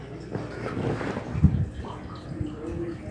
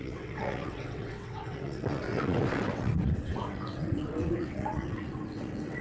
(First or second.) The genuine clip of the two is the first